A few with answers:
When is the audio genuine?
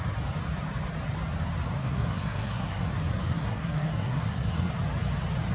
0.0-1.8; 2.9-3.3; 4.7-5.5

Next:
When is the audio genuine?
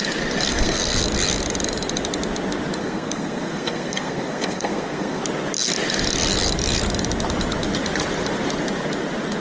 0.0-0.5; 1.0-2.8; 5.2-9.4